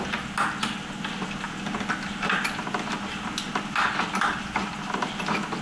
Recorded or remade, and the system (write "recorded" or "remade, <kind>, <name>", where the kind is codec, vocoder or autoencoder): recorded